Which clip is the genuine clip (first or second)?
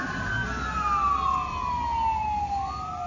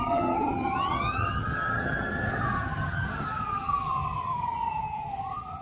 first